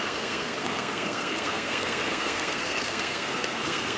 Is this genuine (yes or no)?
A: no